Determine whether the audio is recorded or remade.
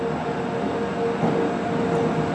recorded